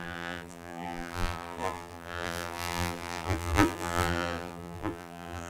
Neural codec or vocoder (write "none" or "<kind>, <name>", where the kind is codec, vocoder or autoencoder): vocoder, BigVGAN v2